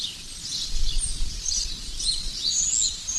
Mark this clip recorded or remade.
recorded